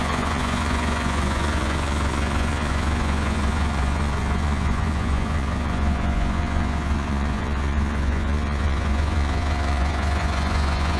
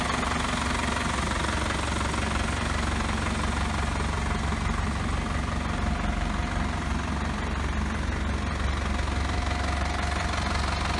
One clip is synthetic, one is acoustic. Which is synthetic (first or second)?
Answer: first